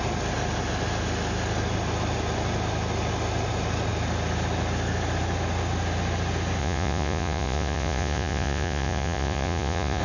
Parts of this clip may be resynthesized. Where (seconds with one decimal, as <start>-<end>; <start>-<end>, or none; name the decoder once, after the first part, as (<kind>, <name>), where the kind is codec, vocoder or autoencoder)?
6.6-10.0 (vocoder, Vocos)

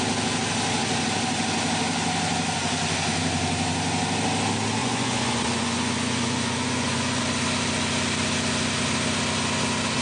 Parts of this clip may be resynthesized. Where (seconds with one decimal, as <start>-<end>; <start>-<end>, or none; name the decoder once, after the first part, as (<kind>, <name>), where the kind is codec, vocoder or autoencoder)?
4.8-7.2 (vocoder, Vocos)

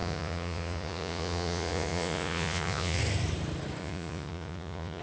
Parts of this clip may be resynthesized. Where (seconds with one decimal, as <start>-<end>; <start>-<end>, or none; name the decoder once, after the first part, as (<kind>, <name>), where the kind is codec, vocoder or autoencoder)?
0.0-3.0 (vocoder, Vocos); 3.8-5.0

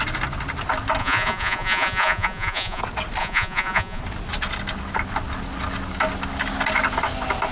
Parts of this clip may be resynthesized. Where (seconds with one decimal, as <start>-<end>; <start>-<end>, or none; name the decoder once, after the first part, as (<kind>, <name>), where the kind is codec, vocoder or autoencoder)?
1.0-2.8 (vocoder, Vocos); 3.2-4.0